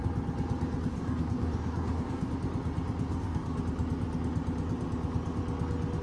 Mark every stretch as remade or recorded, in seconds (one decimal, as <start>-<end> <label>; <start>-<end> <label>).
0.0-0.9 recorded; 0.9-2.3 remade; 2.3-3.1 recorded; 3.1-3.6 remade; 3.6-6.0 recorded